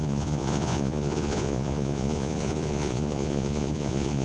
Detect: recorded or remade remade